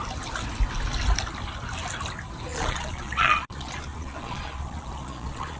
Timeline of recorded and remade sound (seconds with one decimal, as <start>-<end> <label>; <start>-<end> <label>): 0.0-2.5 recorded; 2.5-5.6 remade